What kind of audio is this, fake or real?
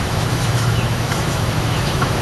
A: fake